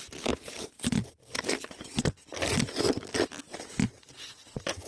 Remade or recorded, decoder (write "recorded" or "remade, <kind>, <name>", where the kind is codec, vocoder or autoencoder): recorded